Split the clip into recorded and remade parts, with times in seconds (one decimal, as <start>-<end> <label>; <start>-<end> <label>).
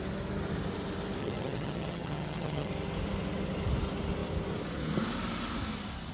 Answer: 0.0-1.2 recorded; 1.2-2.7 remade; 2.7-6.1 recorded